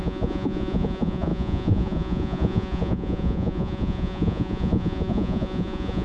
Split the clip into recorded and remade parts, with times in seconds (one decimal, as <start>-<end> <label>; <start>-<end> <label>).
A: 0.0-6.0 remade